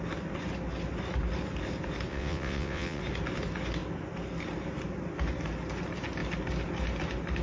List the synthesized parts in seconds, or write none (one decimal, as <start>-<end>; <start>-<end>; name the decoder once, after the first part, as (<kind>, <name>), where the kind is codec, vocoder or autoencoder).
2.1-3.0 (vocoder, WaveNeXt)